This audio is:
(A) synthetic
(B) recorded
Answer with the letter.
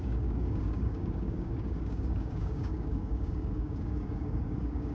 A